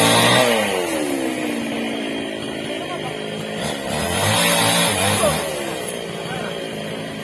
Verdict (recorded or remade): recorded